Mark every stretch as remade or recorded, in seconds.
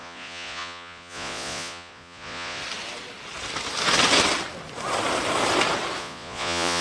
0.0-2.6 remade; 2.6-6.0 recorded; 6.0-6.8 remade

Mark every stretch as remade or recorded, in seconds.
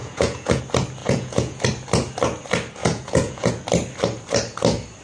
0.0-0.6 remade; 0.6-1.0 recorded; 1.0-1.6 remade; 1.6-2.8 recorded; 2.8-3.5 remade; 3.5-5.0 recorded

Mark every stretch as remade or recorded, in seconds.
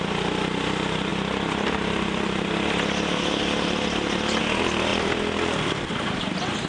0.0-6.7 recorded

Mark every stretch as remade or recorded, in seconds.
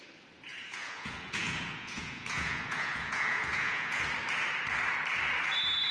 0.0-0.5 recorded; 0.5-4.0 remade; 4.0-5.9 recorded